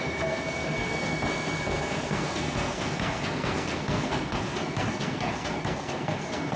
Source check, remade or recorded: remade